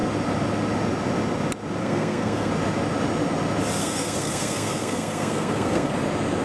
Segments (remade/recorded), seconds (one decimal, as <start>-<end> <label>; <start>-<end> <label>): 0.0-1.8 recorded; 1.8-2.5 remade; 2.5-3.8 recorded; 3.8-5.9 remade; 5.9-6.4 recorded